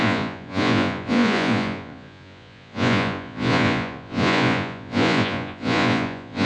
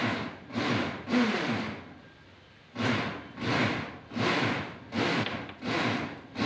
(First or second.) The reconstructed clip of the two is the first